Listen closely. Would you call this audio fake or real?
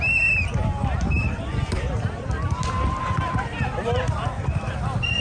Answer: fake